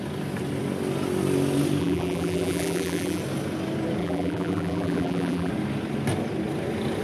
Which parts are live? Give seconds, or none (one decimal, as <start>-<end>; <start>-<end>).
0.0-1.8; 3.2-4.0; 5.5-7.0

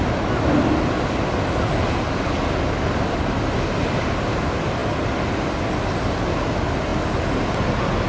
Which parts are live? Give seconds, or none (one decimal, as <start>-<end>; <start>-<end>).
0.0-8.1

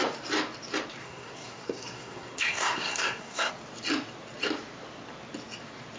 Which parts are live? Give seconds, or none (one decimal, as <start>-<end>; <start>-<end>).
0.0-1.0; 3.5-6.0